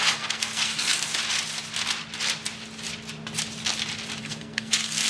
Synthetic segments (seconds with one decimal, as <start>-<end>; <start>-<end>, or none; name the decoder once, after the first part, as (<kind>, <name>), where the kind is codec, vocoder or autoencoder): 0.0-1.1 (codec, SNAC); 4.2-5.1